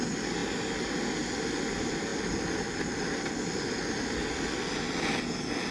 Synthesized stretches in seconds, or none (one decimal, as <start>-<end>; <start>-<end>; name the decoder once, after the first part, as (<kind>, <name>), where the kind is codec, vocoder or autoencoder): none